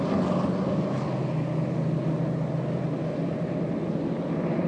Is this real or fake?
real